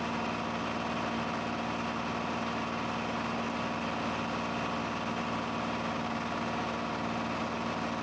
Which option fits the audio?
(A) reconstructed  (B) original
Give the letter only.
B